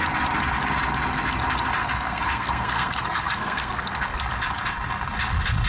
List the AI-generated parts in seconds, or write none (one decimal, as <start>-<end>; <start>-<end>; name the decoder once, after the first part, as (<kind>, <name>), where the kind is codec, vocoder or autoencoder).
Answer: 1.8-4.2 (codec, SNAC)